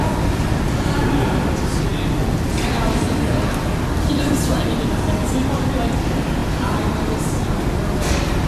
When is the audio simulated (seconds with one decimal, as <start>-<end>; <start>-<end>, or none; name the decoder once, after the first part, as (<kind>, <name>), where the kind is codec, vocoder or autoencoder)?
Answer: none